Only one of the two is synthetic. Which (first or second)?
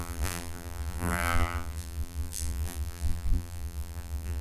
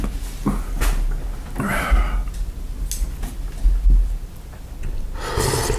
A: first